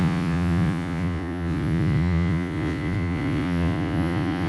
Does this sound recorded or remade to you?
remade